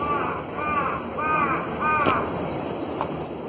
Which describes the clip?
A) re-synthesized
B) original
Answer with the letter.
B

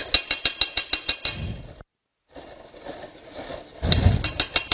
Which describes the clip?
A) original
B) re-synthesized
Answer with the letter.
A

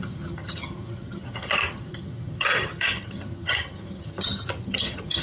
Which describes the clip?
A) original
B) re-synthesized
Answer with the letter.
B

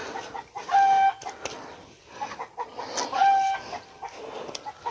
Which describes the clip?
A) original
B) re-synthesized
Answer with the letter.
A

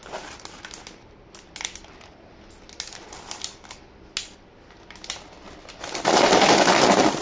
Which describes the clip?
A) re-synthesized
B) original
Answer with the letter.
B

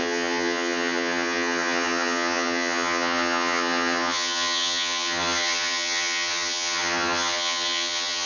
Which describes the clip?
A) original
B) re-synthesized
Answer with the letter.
B